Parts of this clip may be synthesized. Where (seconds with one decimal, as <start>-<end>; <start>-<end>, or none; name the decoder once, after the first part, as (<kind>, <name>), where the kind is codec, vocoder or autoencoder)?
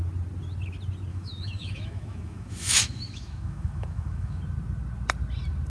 1.1-4.4 (autoencoder, DAC-VAE)